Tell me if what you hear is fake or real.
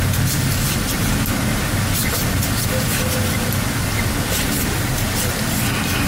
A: real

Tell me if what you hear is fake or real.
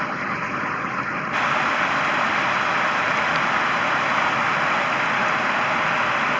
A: real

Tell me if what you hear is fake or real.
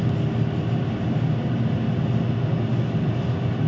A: real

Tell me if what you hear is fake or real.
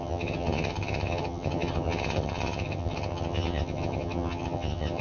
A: fake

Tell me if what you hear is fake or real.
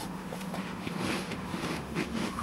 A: fake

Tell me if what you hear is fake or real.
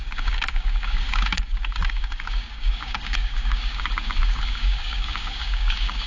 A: fake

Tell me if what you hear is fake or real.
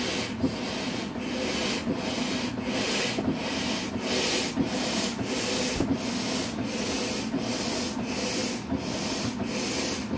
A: real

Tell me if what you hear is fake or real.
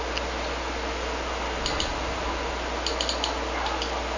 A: real